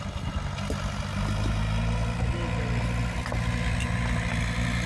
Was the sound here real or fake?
real